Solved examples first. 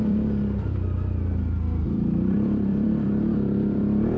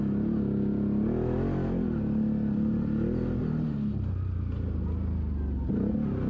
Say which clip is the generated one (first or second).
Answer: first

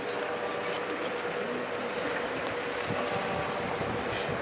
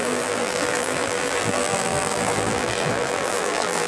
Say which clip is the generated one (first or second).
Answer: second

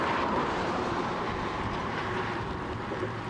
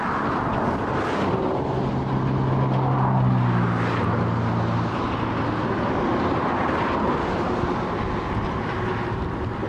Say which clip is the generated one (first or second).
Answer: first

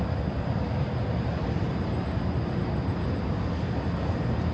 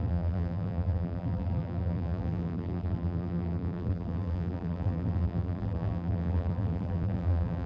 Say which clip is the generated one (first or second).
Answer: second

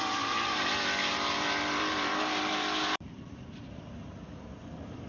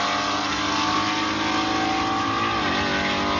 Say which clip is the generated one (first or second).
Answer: first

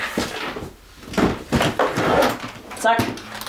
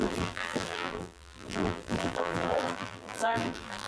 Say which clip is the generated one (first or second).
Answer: second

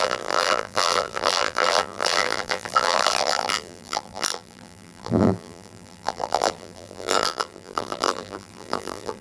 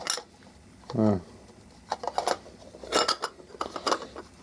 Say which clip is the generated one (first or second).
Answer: first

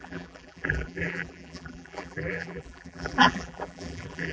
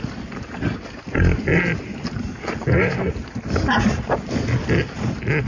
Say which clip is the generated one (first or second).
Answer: first